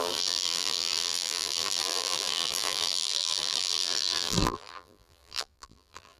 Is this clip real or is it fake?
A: fake